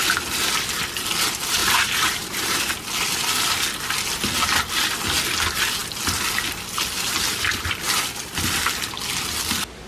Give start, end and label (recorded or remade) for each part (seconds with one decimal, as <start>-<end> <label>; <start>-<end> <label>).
0.0-1.6 recorded; 1.6-2.6 remade; 2.6-9.9 recorded